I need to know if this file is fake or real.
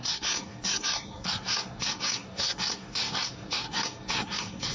fake